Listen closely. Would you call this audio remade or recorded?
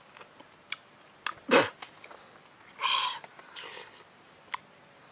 recorded